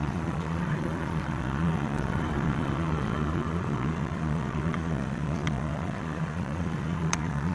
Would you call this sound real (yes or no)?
no